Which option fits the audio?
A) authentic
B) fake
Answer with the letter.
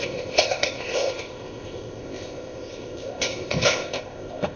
B